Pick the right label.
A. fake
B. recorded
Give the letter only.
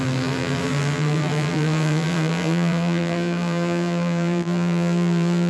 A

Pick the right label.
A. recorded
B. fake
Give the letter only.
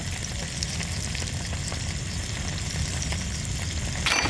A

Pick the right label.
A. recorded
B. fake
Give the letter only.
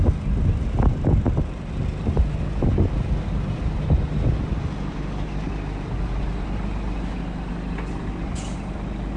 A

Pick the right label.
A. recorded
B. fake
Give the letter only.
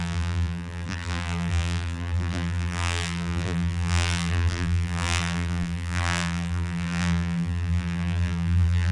B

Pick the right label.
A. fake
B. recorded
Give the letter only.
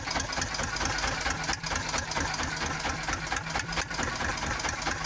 B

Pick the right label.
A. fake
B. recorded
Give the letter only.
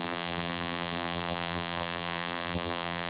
A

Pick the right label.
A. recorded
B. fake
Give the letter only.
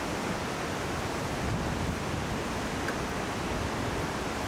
A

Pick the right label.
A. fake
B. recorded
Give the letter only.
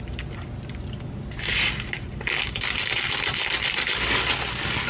B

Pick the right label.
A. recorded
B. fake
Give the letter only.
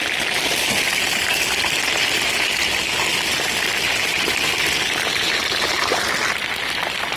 A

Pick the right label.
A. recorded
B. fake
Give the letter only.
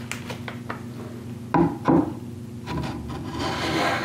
A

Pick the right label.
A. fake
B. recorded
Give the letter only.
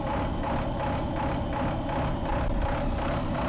B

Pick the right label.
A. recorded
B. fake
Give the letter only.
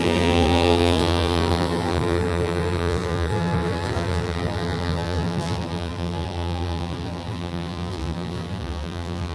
B